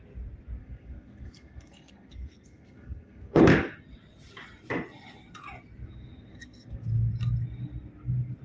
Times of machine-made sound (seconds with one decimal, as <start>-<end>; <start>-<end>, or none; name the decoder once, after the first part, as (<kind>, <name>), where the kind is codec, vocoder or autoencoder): 0.6-3.4 (codec, SNAC); 6.3-7.1